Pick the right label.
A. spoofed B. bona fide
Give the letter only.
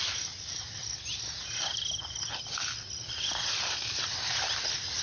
B